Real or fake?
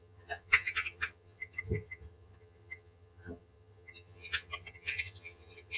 fake